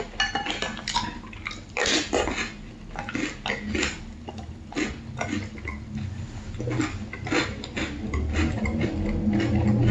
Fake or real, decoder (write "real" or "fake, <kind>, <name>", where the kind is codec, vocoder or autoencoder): real